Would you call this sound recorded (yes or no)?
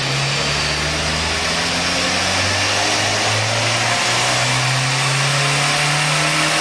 yes